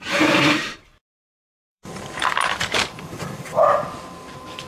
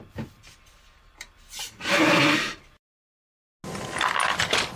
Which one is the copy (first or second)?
first